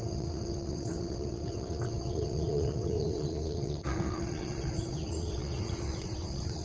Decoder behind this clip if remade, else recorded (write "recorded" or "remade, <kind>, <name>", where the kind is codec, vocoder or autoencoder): remade, vocoder, WaveNeXt